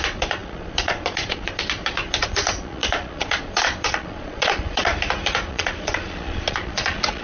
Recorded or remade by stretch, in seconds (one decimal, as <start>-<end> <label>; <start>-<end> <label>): 0.0-4.9 remade; 4.9-5.5 recorded; 5.5-7.2 remade